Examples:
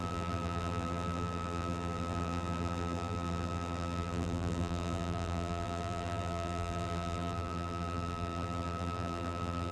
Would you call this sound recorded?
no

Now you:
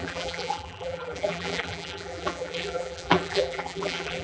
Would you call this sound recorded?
no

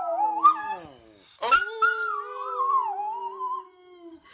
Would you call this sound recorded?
yes